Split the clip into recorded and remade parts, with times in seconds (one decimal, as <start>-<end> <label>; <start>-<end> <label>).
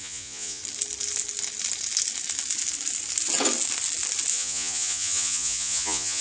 0.0-0.6 remade; 0.6-4.3 recorded; 4.3-6.2 remade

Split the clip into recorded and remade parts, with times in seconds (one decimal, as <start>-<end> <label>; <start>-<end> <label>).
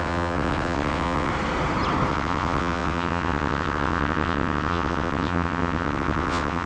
0.0-1.3 remade; 1.3-2.1 recorded; 2.1-6.7 remade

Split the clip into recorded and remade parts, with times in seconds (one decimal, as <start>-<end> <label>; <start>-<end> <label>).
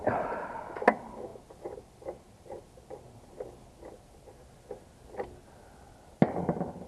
0.0-6.9 recorded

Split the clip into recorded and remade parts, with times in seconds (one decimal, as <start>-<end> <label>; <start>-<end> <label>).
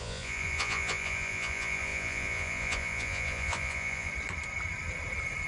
0.0-4.1 remade; 4.1-5.5 recorded